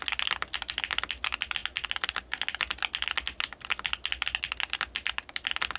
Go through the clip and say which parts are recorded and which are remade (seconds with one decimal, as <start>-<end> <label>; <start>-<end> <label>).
0.0-5.8 recorded